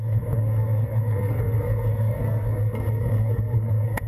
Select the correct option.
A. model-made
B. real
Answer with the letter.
A